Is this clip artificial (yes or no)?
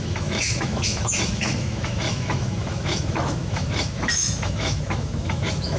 yes